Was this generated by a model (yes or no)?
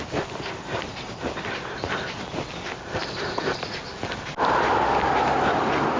no